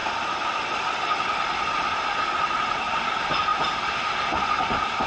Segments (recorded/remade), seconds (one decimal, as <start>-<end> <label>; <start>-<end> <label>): 0.0-5.1 recorded